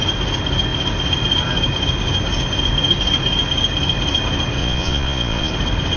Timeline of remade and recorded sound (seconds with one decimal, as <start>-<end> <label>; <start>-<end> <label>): 0.0-4.6 recorded; 4.6-5.5 remade; 5.5-6.0 recorded